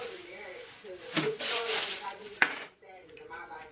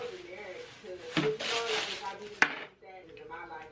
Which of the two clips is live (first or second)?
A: second